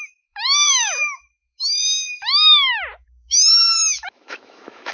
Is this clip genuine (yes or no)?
no